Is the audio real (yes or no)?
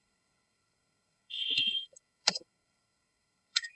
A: no